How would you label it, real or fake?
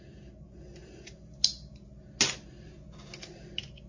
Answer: real